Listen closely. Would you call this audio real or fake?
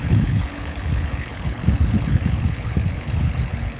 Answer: fake